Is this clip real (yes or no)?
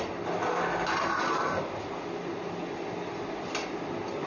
yes